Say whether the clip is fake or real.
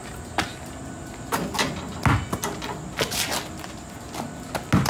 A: real